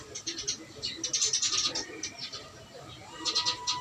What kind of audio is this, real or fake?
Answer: real